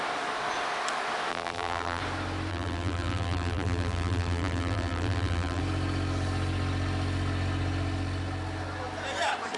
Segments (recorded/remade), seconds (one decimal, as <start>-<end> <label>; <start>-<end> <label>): 0.0-1.3 recorded; 1.3-2.0 remade; 2.0-2.5 recorded; 2.5-5.6 remade; 5.6-9.6 recorded